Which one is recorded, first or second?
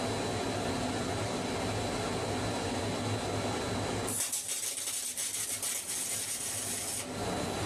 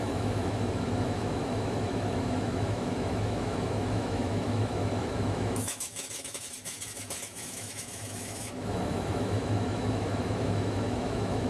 first